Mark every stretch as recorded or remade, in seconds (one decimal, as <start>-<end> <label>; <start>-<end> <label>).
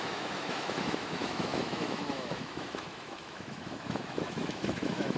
0.0-5.2 remade